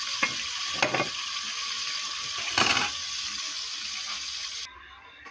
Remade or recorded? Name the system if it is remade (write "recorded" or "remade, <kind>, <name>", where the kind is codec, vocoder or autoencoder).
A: recorded